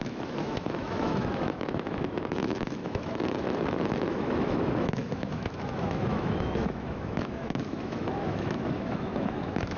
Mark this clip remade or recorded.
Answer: remade